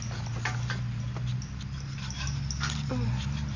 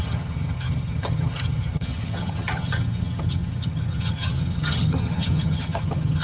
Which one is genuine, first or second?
first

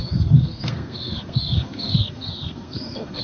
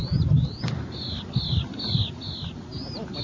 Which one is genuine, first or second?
second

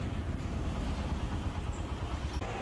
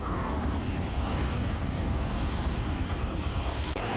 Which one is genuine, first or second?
first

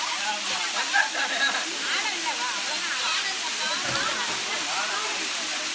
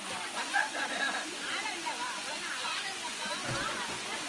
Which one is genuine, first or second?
first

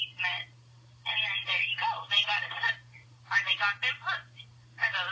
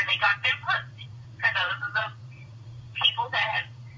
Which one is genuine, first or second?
first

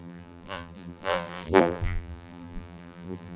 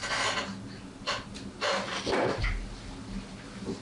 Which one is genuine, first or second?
second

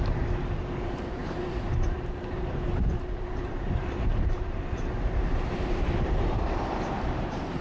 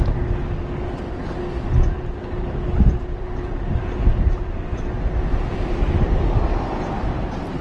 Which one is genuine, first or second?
second